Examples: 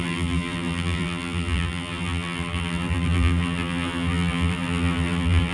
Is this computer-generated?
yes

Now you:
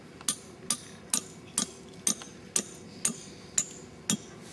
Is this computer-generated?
no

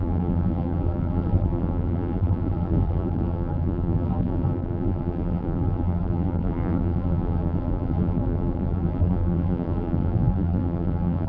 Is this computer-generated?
yes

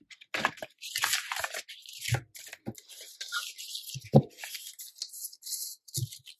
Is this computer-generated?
no